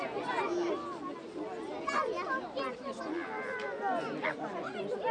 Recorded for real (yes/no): yes